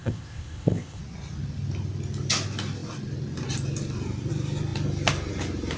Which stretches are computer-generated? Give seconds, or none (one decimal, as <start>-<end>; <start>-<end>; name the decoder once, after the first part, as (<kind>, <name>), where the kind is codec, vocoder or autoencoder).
0.0-1.0 (codec, ZipCodec)